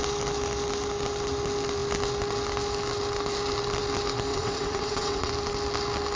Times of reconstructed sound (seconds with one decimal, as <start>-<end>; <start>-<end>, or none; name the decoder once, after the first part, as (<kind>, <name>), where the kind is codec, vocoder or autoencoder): 4.3-5.3 (vocoder, WaveNeXt)

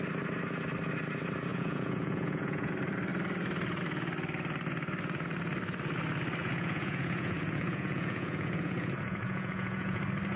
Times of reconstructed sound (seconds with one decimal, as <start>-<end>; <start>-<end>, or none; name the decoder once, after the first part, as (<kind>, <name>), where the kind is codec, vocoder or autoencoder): 1.5-2.7 (vocoder, Vocos); 6.4-10.0